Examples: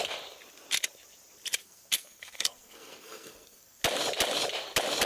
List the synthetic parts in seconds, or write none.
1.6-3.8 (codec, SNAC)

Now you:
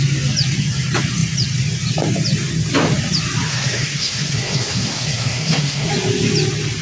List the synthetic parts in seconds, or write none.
3.5-5.9 (codec, SNAC)